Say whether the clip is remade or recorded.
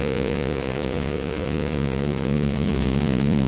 remade